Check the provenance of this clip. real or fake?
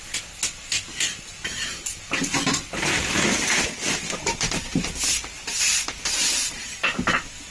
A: real